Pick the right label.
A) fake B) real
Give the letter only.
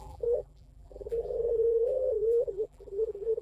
A